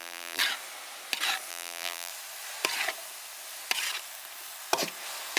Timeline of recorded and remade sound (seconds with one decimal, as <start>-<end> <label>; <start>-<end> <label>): 0.0-0.4 remade; 0.4-1.5 recorded; 1.5-2.1 remade; 2.1-5.4 recorded